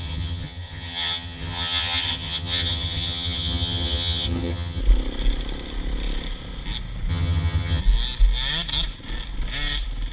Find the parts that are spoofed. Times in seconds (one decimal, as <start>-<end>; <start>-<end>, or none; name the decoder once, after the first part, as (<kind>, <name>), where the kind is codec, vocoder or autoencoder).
0.0-4.8 (vocoder, HiFi-GAN); 7.1-7.8